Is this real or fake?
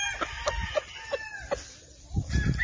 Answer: real